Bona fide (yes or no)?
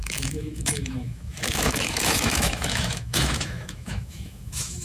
no